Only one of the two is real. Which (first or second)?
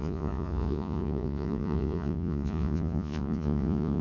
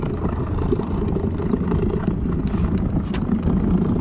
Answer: second